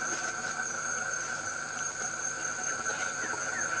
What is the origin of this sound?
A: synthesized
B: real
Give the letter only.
A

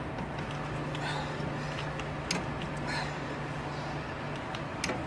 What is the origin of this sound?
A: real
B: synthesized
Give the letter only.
A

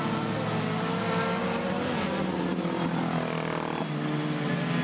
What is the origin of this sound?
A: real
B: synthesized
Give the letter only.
A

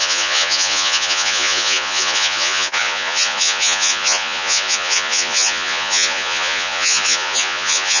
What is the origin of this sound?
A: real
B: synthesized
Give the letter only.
B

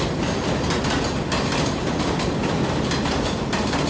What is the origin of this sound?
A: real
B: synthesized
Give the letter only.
A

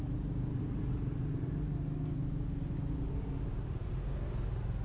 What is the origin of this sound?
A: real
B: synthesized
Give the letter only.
A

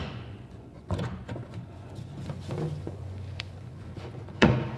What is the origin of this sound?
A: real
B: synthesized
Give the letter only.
B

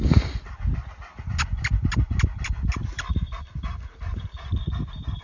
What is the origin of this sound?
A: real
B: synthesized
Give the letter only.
A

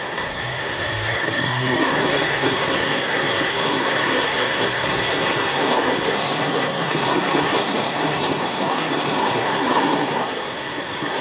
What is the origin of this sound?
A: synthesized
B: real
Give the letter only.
A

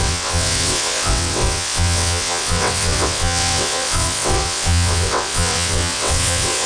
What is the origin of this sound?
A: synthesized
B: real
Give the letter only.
A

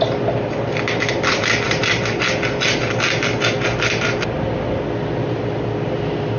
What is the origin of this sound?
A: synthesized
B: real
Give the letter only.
B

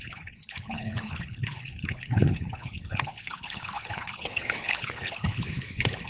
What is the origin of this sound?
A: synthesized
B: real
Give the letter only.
A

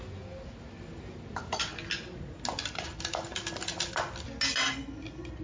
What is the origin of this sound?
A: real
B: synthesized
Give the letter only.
A